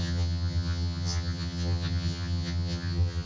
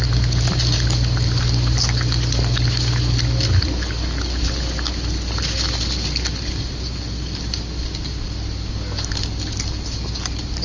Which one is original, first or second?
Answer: second